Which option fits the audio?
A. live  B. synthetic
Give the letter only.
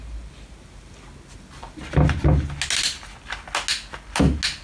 A